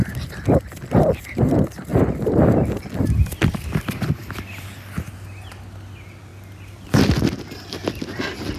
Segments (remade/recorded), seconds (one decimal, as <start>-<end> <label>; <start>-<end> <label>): 0.0-8.6 recorded